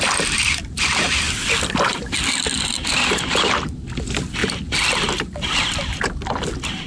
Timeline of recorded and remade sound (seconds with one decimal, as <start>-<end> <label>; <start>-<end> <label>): 0.0-6.9 recorded